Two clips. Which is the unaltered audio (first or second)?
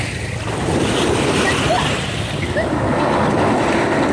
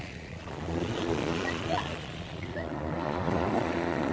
first